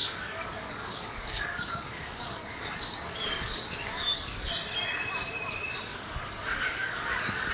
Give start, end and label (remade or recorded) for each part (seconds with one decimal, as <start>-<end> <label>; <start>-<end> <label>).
0.0-4.5 remade; 4.5-5.9 recorded; 5.9-7.5 remade